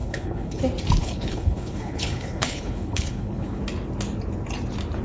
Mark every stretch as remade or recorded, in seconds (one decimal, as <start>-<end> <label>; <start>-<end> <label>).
0.0-0.6 remade; 0.6-1.0 recorded; 1.0-3.6 remade; 3.6-5.0 recorded